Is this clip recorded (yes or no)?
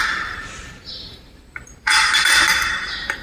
no